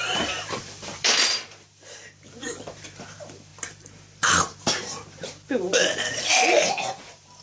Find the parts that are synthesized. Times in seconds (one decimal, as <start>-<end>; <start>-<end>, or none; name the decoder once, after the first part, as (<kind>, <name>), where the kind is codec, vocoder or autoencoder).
0.0-7.4 (vocoder, BigVGAN v2)

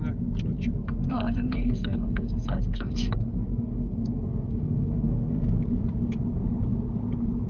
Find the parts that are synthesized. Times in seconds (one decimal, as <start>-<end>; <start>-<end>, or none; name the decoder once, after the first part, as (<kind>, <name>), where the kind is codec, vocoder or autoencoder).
0.8-5.3 (codec, SNAC)

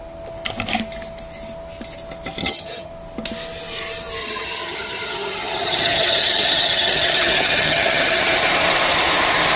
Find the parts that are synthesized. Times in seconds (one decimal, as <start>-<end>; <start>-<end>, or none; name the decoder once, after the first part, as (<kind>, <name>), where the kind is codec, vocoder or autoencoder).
2.4-2.9 (vocoder, HiFi-GAN); 4.2-8.3

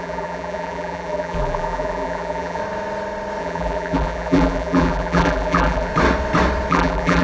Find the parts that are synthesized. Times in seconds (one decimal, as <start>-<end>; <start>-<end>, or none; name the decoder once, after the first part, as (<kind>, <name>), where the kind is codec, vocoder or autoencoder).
0.0-2.6 (vocoder, BigVGAN v2); 3.4-5.9; 6.7-7.2

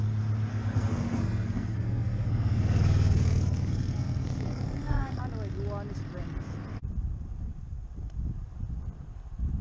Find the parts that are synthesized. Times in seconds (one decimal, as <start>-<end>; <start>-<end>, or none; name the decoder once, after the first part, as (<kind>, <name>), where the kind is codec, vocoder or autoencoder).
0.5-5.2 (codec, SNAC)

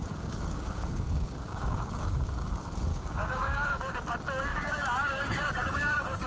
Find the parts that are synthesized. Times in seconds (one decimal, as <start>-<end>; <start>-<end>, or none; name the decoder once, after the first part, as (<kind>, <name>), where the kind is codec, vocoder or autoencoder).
0.0-2.5 (codec, DAC); 2.9-3.9; 4.5-6.3

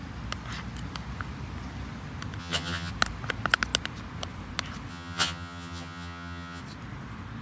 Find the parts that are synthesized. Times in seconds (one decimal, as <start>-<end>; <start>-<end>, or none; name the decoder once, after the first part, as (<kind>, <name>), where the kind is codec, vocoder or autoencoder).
2.4-2.9 (vocoder, HiFi-GAN); 4.9-6.6

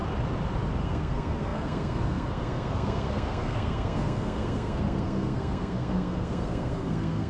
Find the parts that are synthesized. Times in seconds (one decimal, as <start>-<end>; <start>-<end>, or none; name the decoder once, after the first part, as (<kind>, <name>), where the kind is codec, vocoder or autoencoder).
0.8-7.3 (codec, SNAC)